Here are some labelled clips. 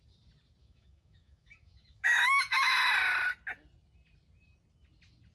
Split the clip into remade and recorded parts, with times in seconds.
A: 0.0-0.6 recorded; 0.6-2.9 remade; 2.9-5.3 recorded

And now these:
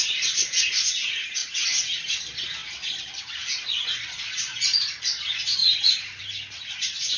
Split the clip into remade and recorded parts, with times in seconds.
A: 0.0-7.2 recorded

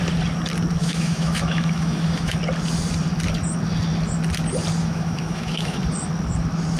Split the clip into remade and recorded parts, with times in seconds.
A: 0.0-0.8 recorded; 0.8-2.4 remade; 2.4-4.8 recorded; 4.8-5.8 remade; 5.8-6.8 recorded

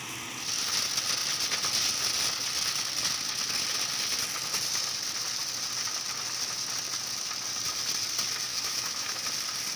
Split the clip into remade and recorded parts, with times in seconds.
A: 0.0-8.5 recorded; 8.5-9.2 remade; 9.2-9.8 recorded